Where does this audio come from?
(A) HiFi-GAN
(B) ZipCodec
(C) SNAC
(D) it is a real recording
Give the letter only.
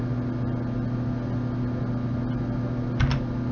D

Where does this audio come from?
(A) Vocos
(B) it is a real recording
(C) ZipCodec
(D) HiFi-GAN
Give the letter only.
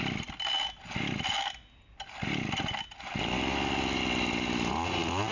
B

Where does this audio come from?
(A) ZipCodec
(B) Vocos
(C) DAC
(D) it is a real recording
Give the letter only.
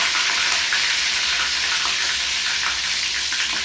D